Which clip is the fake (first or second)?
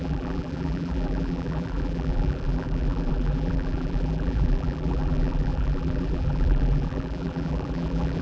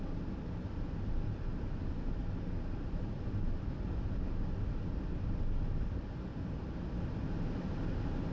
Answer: first